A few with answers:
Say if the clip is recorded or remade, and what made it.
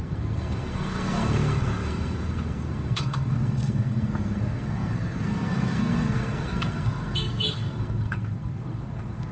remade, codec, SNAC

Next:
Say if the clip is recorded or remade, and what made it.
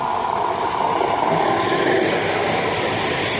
recorded